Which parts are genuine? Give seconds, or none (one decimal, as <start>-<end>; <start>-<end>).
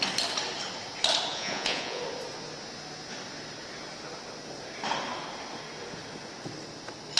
0.0-1.3; 2.0-7.2